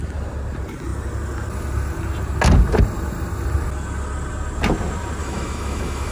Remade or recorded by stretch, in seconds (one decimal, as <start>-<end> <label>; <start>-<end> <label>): 0.0-5.2 recorded; 5.2-6.1 remade